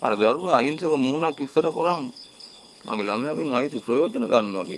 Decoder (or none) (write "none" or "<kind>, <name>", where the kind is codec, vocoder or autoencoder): codec, HILCodec